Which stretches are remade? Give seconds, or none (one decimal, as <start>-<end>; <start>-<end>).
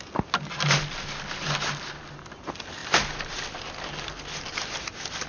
none